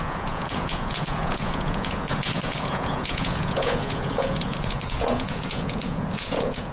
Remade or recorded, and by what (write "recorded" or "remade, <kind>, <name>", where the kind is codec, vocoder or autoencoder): remade, vocoder, Vocos